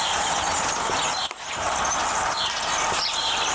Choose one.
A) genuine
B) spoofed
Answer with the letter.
A